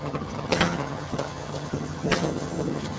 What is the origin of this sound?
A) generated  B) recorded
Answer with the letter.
A